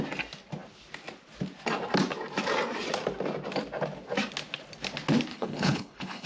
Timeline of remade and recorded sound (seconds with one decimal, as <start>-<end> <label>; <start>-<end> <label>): 0.0-5.3 recorded; 5.3-6.3 remade